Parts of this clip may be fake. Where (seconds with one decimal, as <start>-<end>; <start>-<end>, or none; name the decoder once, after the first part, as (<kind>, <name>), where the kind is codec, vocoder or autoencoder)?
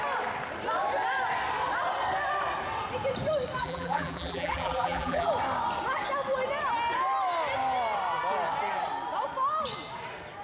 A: 3.6-5.3 (vocoder, BigVGAN v2)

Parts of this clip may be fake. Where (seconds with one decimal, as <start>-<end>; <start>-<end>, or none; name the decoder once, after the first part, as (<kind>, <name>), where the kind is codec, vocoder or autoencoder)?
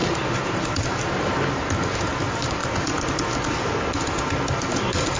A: 0.0-2.6 (vocoder, BigVGAN v2); 4.6-5.2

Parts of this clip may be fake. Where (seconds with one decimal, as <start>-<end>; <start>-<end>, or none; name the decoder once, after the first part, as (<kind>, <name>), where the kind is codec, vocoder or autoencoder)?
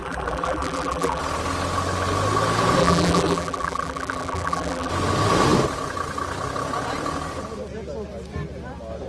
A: 0.0-1.2 (vocoder, BigVGAN v2); 2.8-4.9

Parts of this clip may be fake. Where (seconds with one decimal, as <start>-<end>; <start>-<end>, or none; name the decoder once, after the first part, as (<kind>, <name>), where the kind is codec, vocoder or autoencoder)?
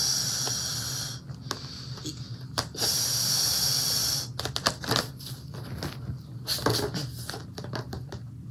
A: 7.4-7.9 (vocoder, BigVGAN v2)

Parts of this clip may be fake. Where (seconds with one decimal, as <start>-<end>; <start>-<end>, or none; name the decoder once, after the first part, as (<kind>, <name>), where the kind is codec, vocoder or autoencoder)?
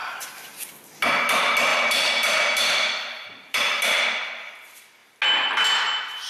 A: 0.0-0.7 (vocoder, BigVGAN v2); 1.7-4.0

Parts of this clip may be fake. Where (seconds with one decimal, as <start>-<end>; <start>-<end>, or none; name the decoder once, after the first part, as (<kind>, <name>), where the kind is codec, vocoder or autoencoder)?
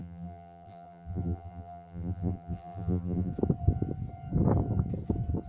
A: 0.0-3.3 (vocoder, BigVGAN v2)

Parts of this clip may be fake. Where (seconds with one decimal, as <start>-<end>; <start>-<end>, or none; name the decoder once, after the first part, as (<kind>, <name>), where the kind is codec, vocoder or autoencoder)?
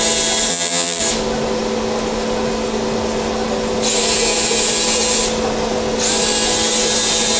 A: 0.5-1.0 (vocoder, BigVGAN v2)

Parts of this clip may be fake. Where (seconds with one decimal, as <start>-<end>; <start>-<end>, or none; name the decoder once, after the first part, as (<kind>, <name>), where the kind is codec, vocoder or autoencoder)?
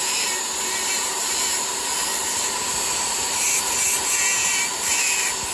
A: 2.1-3.6 (vocoder, BigVGAN v2); 4.4-5.0